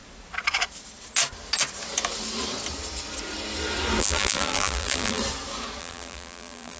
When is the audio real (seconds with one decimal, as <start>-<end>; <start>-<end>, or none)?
0.0-4.0; 5.2-5.8